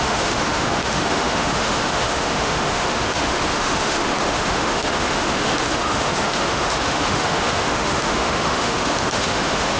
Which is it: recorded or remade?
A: remade